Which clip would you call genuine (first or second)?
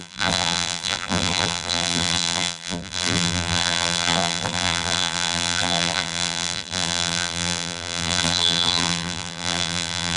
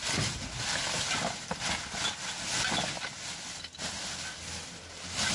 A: second